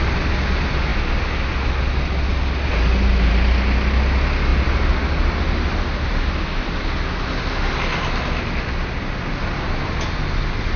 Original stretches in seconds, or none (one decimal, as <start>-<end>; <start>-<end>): 0.0-10.8